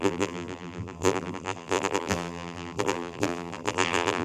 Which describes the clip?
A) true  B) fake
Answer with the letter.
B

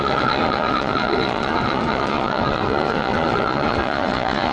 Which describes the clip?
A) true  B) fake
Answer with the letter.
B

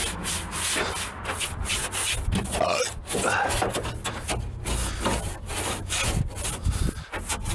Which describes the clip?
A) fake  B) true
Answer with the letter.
B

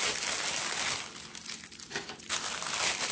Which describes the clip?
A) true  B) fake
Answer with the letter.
A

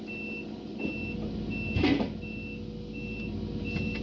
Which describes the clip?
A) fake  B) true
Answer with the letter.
B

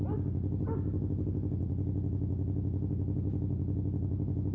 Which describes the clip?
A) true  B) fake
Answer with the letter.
A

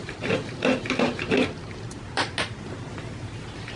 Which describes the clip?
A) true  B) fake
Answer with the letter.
A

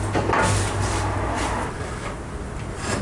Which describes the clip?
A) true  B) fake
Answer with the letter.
A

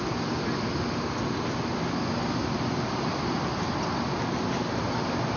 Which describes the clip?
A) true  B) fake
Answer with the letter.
A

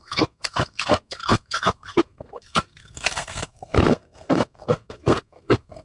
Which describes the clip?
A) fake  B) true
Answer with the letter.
A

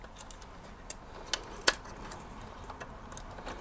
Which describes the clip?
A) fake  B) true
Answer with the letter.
B